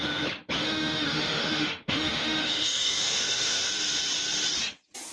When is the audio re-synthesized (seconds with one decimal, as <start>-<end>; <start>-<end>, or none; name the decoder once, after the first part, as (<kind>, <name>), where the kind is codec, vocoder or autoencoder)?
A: 0.6-3.7 (autoencoder, DAC-VAE)